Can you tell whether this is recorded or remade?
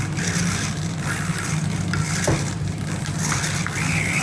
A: recorded